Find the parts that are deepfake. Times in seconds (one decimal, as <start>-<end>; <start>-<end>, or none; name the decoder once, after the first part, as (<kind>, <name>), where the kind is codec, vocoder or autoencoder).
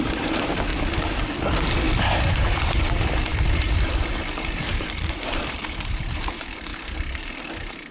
0.0-0.7 (vocoder, BigVGAN v2); 2.0-6.7; 7.5-7.9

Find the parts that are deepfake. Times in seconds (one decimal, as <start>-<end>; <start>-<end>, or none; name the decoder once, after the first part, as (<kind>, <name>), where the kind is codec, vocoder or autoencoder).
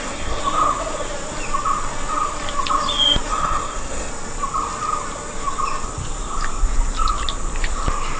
0.0-0.4 (codec, SNAC); 3.3-4.1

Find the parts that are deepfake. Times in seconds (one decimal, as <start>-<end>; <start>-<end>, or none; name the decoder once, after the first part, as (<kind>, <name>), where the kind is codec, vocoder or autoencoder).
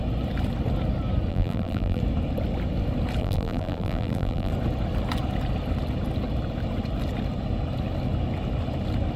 1.3-2.0 (vocoder, BigVGAN v2); 3.2-4.5